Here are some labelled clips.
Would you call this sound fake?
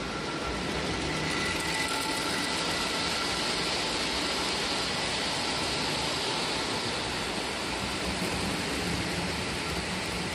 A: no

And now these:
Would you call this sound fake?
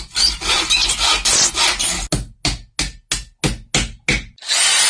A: no